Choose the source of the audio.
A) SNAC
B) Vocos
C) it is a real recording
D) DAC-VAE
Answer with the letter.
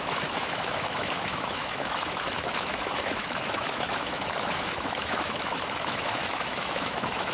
D